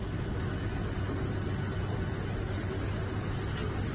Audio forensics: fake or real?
real